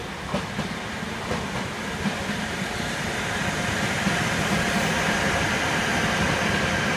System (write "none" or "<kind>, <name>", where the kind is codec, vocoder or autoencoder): vocoder, BigVGAN v2